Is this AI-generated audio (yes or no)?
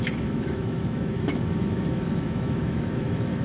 yes